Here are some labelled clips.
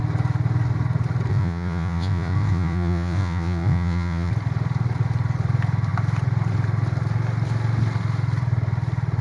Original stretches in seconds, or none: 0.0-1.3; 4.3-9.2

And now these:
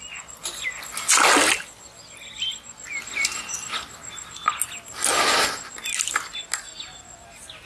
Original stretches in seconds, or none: 0.0-7.7

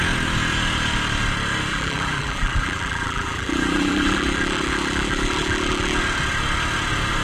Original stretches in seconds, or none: 0.0-1.7; 6.0-7.2